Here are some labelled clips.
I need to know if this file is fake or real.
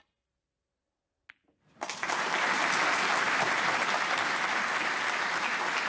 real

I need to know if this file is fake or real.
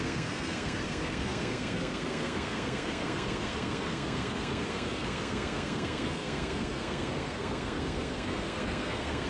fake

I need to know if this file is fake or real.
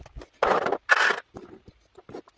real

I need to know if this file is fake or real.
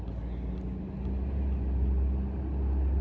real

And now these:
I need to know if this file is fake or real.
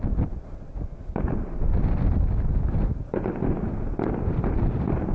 real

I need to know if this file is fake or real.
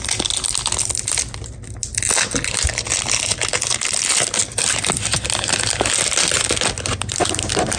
real